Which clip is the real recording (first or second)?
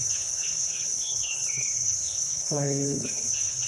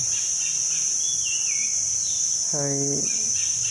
second